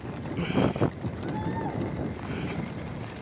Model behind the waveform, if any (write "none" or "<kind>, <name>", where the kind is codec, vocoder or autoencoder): none